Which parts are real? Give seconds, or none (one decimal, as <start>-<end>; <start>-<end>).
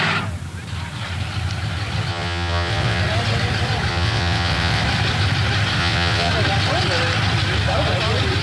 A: 0.0-2.1; 3.0-3.9; 4.8-5.8; 6.3-8.4